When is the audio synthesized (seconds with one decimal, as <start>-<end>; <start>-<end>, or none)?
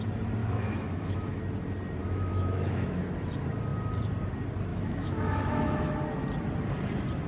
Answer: 0.4-1.4; 2.0-3.0; 4.7-5.9